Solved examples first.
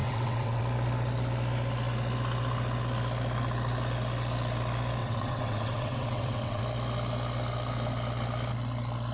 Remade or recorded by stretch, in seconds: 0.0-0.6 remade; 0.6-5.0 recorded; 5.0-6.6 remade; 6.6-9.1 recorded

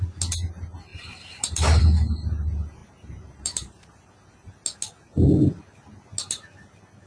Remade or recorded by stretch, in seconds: 0.0-0.9 recorded; 0.9-1.8 remade; 1.8-2.8 recorded; 2.8-3.9 remade; 3.9-7.1 recorded

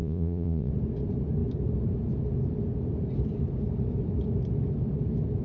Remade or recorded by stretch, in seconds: 0.0-0.7 remade; 0.7-5.4 recorded